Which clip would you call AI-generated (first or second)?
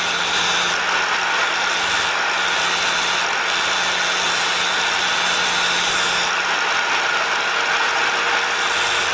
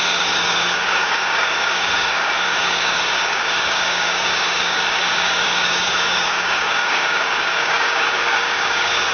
second